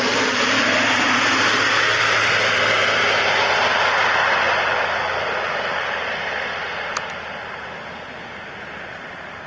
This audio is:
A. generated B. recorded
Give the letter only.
B